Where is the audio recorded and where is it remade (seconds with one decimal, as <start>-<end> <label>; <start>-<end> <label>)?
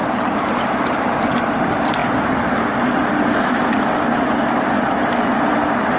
0.0-2.0 remade; 2.0-5.5 recorded; 5.5-6.0 remade